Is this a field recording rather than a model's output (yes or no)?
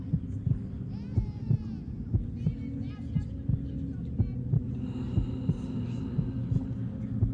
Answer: yes